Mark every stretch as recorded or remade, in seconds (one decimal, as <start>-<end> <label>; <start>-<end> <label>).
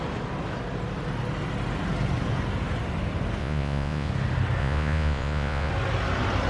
0.0-3.4 recorded; 3.4-4.1 remade; 4.1-4.6 recorded; 4.6-5.7 remade; 5.7-6.5 recorded